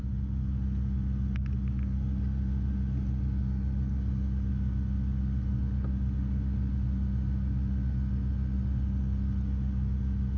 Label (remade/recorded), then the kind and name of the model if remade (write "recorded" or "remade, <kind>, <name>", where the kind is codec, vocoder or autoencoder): recorded